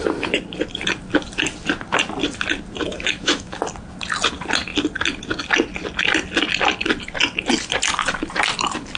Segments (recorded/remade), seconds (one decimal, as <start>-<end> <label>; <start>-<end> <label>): 0.0-2.9 recorded; 2.9-3.6 remade; 3.6-9.0 recorded